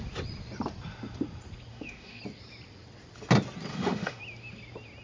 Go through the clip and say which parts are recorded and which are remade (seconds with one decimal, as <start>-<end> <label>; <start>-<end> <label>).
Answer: 0.0-1.7 recorded; 1.7-2.2 remade; 2.2-3.7 recorded; 3.7-4.2 remade; 4.2-5.0 recorded

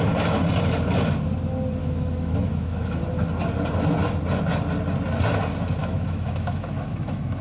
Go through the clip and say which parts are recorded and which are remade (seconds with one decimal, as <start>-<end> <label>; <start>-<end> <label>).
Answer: 0.0-1.8 recorded; 1.8-3.0 remade; 3.0-5.8 recorded; 5.8-7.4 remade